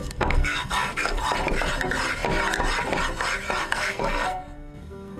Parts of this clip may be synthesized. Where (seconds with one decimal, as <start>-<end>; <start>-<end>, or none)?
0.0-1.2; 3.6-5.2